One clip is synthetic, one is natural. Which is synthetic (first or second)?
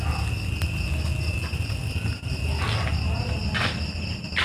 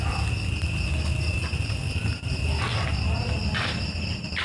second